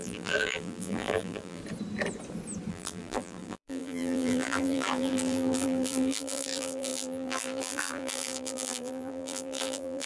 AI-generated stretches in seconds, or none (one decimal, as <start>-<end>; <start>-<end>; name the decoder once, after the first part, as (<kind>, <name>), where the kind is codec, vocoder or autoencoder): 0.0-1.6 (vocoder, BigVGAN v2); 2.7-10.1